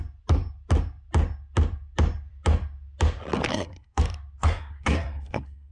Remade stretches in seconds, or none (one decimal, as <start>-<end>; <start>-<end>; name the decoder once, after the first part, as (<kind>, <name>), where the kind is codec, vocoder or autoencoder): 3.5-4.0 (codec, SNAC); 4.4-5.7